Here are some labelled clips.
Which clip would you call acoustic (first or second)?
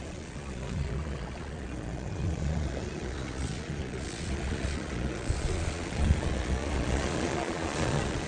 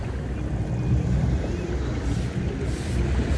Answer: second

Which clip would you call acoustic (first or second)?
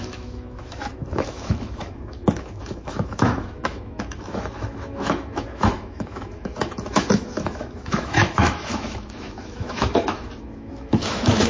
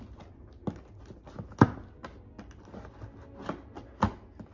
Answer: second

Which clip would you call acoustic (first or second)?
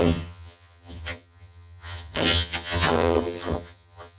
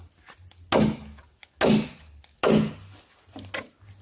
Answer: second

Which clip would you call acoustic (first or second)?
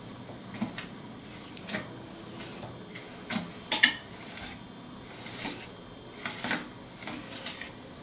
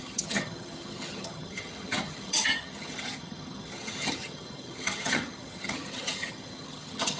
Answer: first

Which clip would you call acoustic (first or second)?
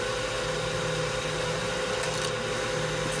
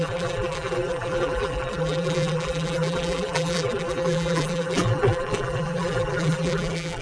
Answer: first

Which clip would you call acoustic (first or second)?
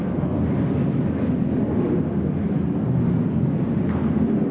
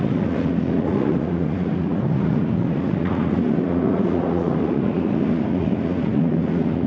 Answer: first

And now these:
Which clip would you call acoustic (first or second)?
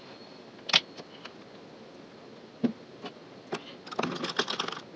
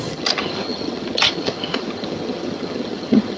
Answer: first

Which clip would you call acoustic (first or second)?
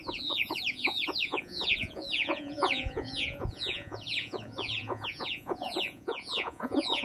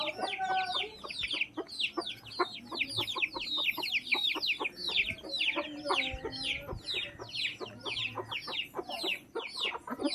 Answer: second